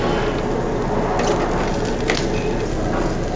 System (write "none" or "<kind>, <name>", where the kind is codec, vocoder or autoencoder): none